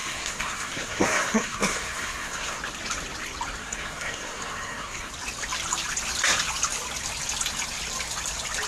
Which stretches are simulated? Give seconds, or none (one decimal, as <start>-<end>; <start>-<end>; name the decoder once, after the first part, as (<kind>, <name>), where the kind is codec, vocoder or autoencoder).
0.0-2.6 (codec, SNAC); 3.6-5.1